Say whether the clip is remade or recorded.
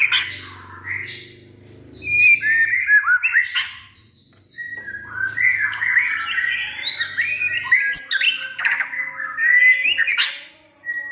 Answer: recorded